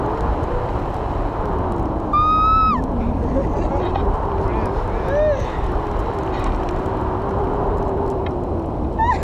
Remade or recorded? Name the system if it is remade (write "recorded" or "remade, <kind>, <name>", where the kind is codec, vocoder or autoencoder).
recorded